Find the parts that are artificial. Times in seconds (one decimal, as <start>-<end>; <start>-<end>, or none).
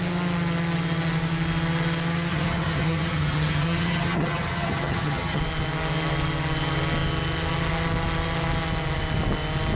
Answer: 2.3-5.4